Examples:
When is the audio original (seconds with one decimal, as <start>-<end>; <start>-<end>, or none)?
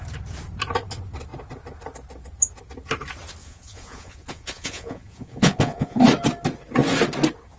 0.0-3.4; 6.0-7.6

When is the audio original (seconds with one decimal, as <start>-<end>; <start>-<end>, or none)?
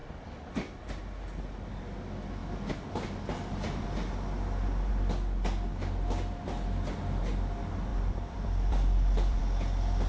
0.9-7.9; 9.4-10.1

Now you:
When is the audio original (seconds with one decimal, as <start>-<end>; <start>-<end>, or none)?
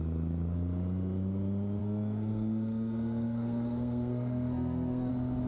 0.0-1.8; 5.1-5.5